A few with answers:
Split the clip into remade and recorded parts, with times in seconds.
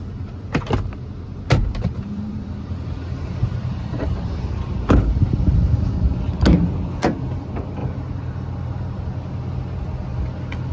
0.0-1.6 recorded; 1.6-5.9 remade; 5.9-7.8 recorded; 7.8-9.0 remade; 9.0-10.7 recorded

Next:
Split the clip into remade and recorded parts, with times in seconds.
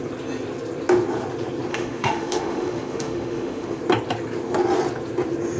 0.0-1.7 recorded; 1.7-3.8 remade; 3.8-5.6 recorded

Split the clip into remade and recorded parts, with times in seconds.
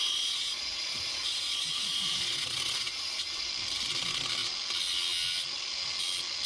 0.0-3.5 remade; 3.5-6.5 recorded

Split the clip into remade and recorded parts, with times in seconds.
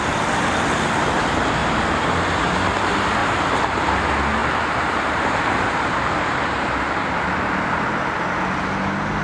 0.0-1.6 recorded; 1.6-2.6 remade; 2.6-3.2 recorded; 3.2-3.9 remade; 3.9-4.4 recorded; 4.4-6.7 remade; 6.7-9.2 recorded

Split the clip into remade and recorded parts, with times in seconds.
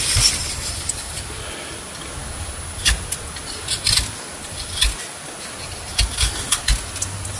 0.0-7.4 recorded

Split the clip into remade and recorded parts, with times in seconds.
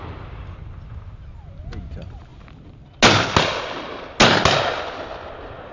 0.0-5.7 recorded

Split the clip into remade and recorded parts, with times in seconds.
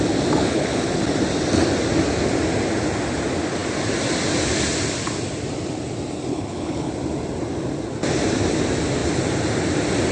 0.0-0.4 recorded; 0.4-1.0 remade; 1.0-6.3 recorded; 6.3-6.9 remade; 6.9-10.1 recorded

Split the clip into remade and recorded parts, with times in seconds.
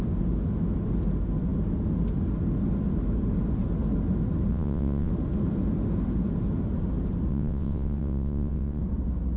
0.0-4.5 recorded; 4.5-5.1 remade; 5.1-7.3 recorded; 7.3-8.8 remade; 8.8-9.4 recorded